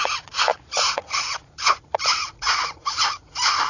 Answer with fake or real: fake